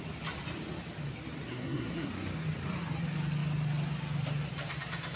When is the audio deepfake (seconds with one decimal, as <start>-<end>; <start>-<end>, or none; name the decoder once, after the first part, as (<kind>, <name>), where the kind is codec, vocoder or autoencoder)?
1.5-2.1 (codec, SNAC)